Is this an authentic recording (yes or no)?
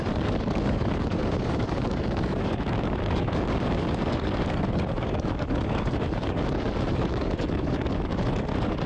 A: no